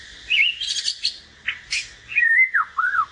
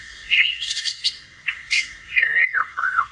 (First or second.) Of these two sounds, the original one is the first